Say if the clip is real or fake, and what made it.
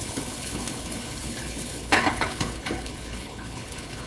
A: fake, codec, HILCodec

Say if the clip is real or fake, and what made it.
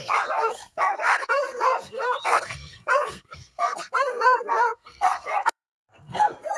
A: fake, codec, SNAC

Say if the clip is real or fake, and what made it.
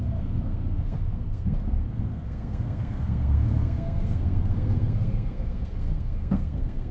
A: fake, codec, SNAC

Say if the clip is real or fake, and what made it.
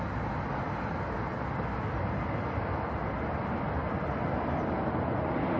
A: real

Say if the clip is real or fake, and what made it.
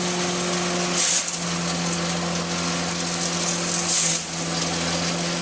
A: real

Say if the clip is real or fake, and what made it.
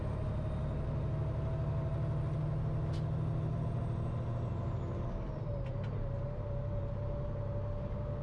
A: real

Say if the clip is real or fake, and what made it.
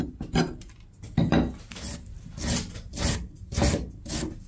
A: real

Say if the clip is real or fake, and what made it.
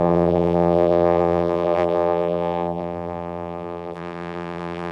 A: fake, vocoder, BigVGAN v2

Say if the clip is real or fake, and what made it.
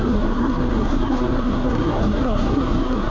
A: fake, codec, SNAC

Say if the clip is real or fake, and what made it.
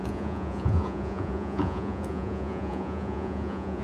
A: fake, vocoder, Vocos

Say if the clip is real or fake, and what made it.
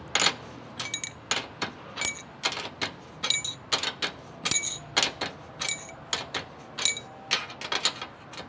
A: real